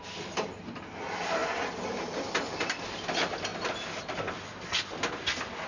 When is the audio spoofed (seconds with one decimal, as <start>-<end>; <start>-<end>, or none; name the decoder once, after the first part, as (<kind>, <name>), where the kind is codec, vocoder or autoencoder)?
none